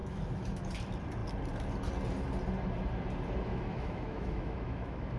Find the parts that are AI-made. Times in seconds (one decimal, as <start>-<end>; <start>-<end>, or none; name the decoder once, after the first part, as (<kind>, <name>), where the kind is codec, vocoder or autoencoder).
0.0-0.6 (autoencoder, DAC-VAE); 3.5-5.2